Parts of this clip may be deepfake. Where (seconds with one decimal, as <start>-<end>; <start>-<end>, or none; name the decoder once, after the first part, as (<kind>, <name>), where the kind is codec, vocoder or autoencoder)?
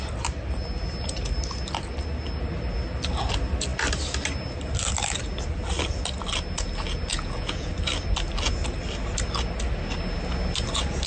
7.1-7.7 (vocoder, Vocos)